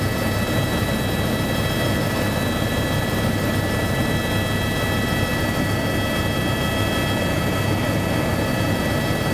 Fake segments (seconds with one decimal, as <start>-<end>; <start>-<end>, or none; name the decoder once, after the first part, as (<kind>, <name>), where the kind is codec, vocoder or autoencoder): none